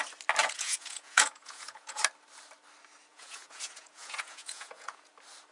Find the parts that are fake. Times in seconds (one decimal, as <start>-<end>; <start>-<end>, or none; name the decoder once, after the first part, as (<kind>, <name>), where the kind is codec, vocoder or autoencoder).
0.4-2.0 (vocoder, Vocos); 3.1-5.1